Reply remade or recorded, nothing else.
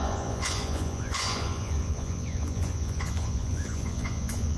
remade